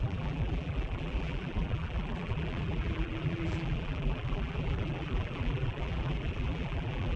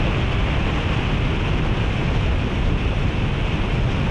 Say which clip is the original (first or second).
second